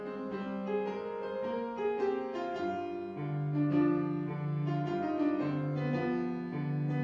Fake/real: real